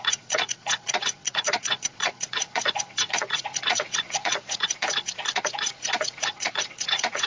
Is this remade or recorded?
remade